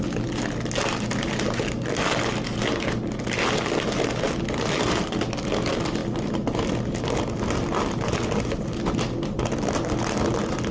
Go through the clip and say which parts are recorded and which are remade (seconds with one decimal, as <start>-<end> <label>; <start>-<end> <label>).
0.0-10.7 recorded